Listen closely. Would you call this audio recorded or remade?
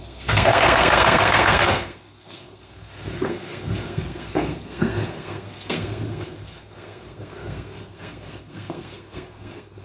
remade